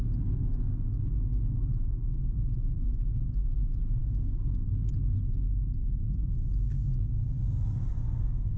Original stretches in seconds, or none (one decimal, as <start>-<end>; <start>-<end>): 0.0-4.0; 4.7-8.6